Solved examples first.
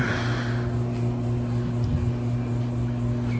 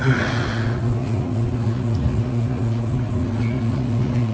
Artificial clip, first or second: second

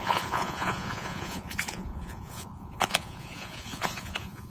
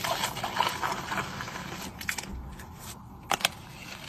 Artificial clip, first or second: first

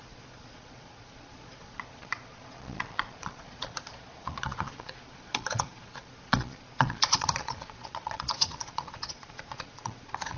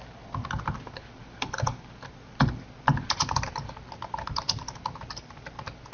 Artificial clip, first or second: first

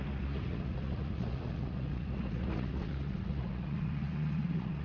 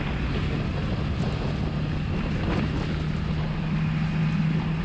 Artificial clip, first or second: first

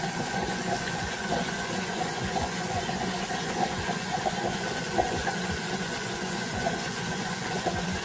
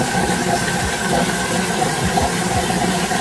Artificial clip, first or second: first